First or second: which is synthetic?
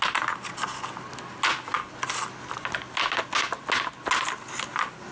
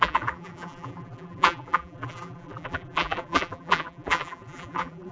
second